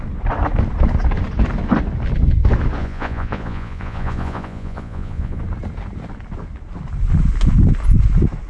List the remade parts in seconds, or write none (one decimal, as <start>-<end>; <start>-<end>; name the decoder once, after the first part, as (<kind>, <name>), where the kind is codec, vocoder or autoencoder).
2.8-5.4 (vocoder, Vocos)